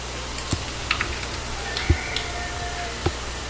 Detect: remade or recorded recorded